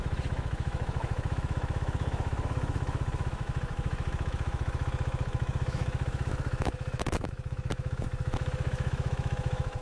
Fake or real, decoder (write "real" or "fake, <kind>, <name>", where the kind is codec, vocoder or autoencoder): fake, autoencoder, DAC-VAE